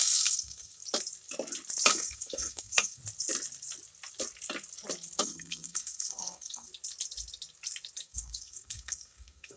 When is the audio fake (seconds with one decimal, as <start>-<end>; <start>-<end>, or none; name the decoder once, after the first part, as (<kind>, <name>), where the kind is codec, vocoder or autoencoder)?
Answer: 0.0-0.8 (codec, SNAC); 1.9-3.0; 5.2-6.7; 8.0-9.6